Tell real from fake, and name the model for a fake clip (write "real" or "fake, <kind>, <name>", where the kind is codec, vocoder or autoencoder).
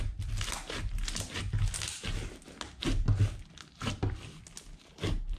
real